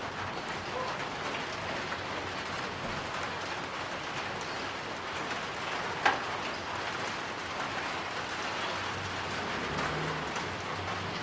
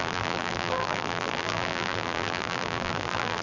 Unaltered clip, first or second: first